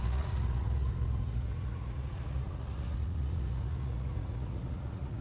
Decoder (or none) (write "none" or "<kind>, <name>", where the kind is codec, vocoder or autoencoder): vocoder, Vocos